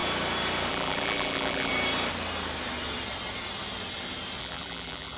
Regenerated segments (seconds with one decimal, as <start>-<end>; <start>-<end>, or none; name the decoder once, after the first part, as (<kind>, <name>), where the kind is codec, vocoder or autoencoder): 0.7-1.7 (vocoder, BigVGAN v2); 4.4-5.2